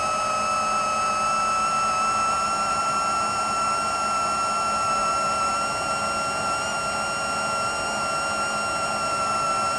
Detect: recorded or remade recorded